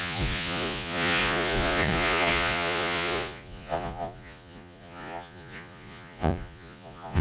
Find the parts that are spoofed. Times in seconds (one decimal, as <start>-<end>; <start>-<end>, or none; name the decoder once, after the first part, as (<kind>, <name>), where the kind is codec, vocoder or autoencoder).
0.0-7.2 (vocoder, Vocos)